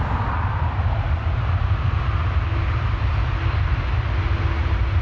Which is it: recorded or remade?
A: recorded